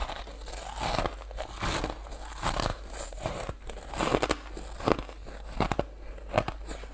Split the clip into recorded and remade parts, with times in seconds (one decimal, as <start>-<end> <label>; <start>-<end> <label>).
0.0-2.7 recorded; 2.7-3.9 remade; 3.9-6.9 recorded